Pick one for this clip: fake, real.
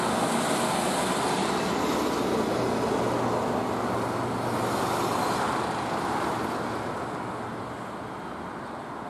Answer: real